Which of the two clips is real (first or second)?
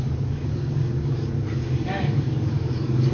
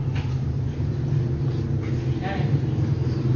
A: second